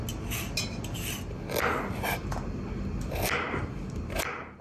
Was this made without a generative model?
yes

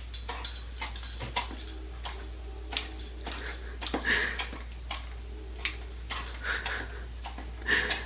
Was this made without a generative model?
yes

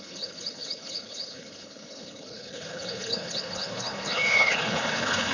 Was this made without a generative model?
no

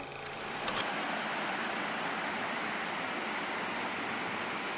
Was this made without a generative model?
yes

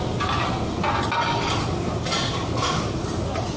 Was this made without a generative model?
yes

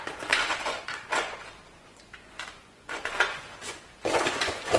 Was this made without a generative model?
no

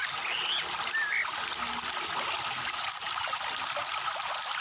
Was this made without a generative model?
yes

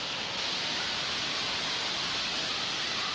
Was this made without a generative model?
yes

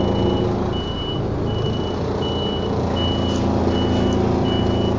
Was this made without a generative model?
yes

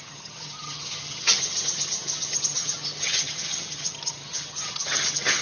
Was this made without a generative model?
no